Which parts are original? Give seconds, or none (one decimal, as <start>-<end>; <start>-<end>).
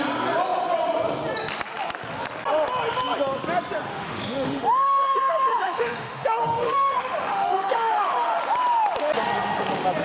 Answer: 0.0-3.9; 8.4-10.0